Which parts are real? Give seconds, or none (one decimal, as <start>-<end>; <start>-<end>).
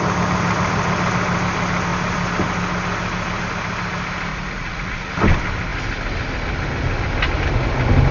0.0-4.3; 5.1-8.1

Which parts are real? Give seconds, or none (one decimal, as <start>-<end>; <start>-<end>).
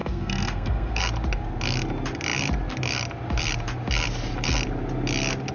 1.0-5.5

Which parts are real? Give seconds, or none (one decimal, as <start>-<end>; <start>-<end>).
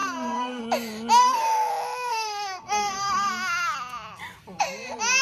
0.6-1.2; 1.7-2.1; 3.3-5.2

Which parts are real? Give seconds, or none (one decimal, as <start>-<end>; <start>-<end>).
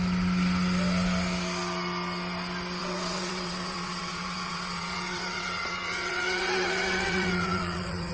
0.0-2.8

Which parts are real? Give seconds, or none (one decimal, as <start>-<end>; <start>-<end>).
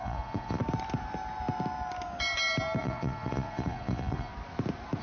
0.6-2.8; 4.3-5.0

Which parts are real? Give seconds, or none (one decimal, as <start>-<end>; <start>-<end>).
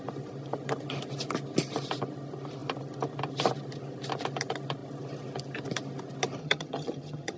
0.0-6.4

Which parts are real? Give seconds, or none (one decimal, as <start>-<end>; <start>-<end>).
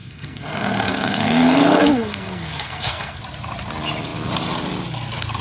3.2-5.4